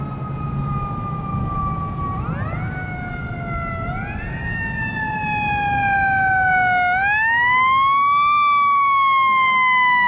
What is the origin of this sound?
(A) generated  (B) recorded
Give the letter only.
B